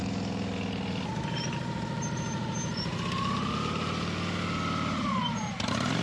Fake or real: real